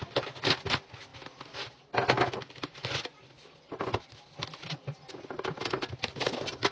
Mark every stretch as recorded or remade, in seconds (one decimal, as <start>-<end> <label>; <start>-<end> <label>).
0.0-6.7 recorded